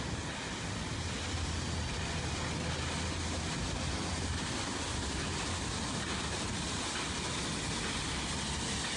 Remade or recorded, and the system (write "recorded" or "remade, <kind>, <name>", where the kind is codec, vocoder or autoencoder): recorded